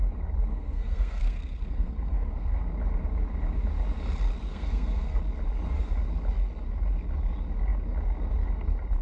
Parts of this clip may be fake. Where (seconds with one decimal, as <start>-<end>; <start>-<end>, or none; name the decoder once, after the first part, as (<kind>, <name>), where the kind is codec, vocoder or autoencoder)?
0.5-2.5 (codec, SNAC); 4.5-5.2